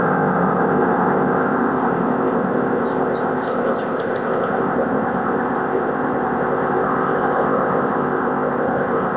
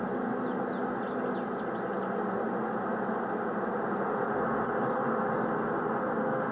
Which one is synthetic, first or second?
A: first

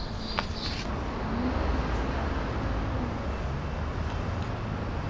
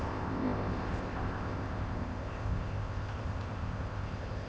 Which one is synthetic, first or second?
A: second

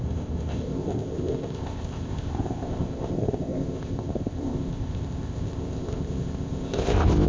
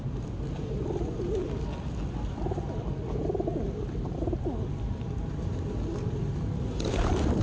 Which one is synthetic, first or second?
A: first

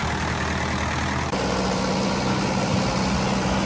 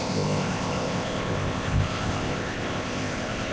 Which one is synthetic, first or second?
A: second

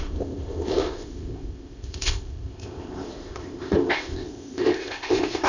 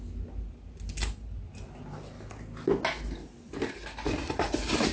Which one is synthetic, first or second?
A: first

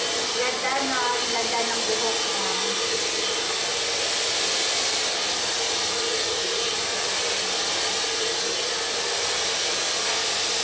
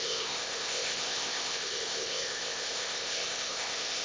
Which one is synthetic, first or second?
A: second